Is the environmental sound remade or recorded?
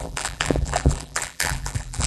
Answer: remade